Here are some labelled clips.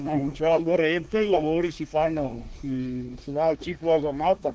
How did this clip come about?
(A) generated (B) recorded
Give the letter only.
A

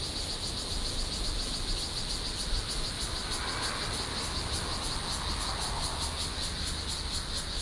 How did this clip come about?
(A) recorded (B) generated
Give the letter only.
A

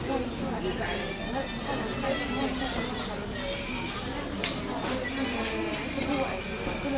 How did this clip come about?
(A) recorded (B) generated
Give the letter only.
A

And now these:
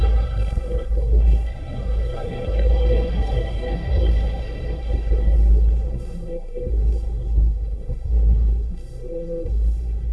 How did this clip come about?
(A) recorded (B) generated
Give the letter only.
B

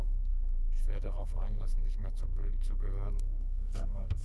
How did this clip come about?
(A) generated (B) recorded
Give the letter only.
A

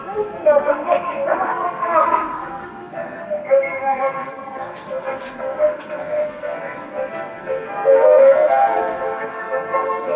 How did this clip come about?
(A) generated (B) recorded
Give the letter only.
A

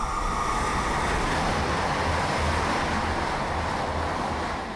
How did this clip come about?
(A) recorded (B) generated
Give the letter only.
A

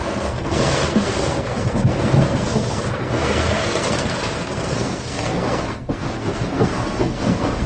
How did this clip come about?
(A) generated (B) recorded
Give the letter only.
A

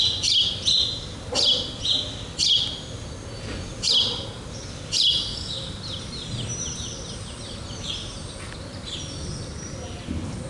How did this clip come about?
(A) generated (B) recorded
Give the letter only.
B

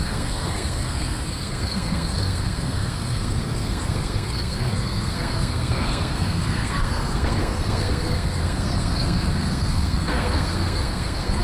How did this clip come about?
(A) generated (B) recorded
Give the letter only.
A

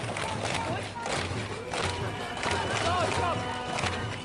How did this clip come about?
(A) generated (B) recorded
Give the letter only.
B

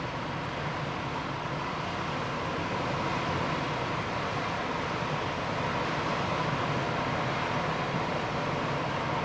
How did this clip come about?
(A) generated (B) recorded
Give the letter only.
B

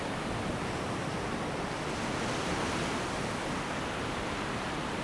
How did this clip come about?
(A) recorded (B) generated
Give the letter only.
A